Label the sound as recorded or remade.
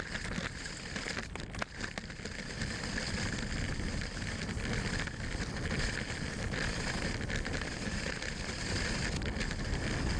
recorded